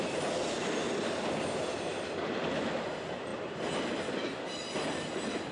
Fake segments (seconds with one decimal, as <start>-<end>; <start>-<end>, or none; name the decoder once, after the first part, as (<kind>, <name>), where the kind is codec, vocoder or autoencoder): none